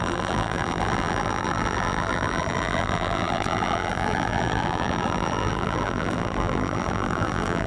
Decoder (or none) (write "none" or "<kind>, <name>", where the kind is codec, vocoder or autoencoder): vocoder, BigVGAN v2